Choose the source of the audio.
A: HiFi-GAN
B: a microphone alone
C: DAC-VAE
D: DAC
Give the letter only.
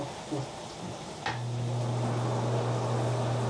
B